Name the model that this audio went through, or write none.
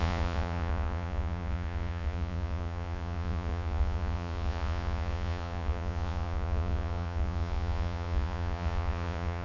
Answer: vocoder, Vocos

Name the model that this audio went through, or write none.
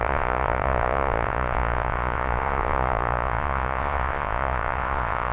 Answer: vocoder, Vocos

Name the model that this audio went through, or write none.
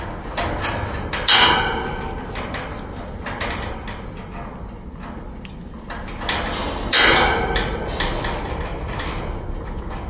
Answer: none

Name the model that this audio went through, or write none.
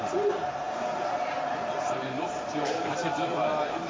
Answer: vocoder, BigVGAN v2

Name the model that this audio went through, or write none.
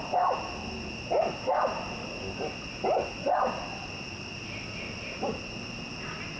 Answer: none